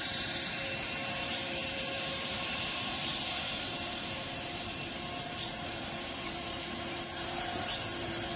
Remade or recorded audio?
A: remade